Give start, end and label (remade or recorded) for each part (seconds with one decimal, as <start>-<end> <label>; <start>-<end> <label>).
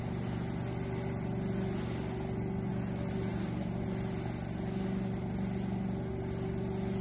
0.0-7.0 recorded